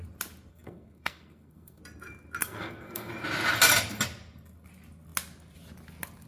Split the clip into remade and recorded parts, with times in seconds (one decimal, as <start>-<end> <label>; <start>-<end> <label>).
0.0-0.5 recorded; 0.5-1.8 remade; 1.8-2.4 recorded; 2.4-3.1 remade; 3.1-6.3 recorded